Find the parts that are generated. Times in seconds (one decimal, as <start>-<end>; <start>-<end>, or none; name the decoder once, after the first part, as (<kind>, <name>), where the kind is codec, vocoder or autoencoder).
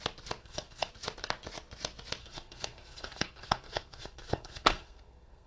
0.4-0.9 (codec, SNAC); 2.2-5.5